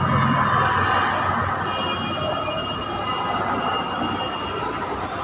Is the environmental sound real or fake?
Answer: real